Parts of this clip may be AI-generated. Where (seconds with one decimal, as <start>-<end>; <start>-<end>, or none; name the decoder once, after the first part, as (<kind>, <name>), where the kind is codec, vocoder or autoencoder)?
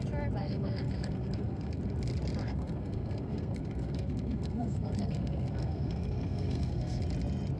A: 0.4-1.8 (codec, SNAC); 2.4-7.0